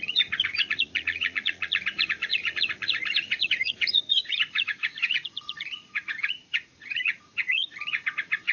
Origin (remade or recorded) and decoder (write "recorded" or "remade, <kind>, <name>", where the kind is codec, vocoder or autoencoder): remade, vocoder, Vocos